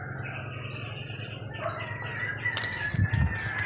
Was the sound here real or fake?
real